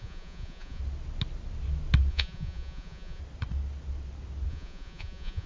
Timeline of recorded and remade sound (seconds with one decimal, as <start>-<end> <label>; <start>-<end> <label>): 0.0-0.8 remade; 0.8-2.1 recorded; 2.1-3.2 remade; 3.2-4.5 recorded; 4.5-5.5 remade